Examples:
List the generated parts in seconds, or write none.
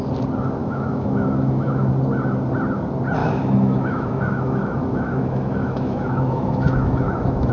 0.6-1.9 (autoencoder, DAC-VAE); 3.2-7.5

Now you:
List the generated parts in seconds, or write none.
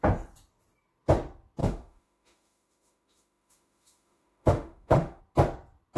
1.6-5.2 (autoencoder, DAC-VAE)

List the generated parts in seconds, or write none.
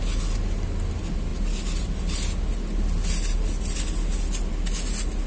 none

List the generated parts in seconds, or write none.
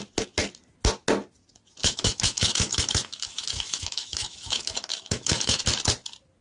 1.8-5.6 (autoencoder, DAC-VAE)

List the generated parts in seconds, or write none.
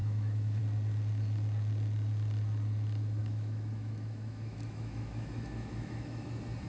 0.0-0.6 (autoencoder, DAC-VAE); 3.2-6.3